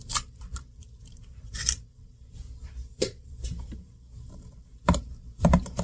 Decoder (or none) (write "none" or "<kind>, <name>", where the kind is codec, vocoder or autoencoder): vocoder, BigVGAN v2